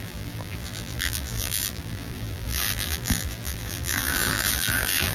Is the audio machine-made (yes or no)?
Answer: yes